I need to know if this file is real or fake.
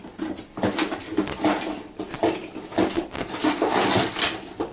real